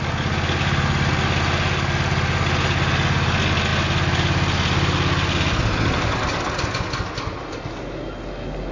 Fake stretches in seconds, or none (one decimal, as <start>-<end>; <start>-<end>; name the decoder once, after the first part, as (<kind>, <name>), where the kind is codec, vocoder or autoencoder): none